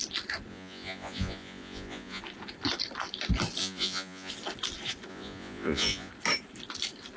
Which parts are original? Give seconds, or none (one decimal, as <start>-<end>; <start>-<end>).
0.0-0.5; 2.2-3.6; 4.3-5.1; 6.1-7.2